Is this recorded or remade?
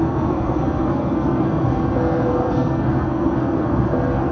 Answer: remade